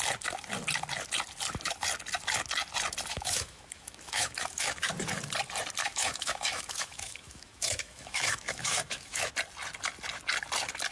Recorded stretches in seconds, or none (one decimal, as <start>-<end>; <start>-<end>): 0.0-3.1; 4.9-5.8; 9.3-10.9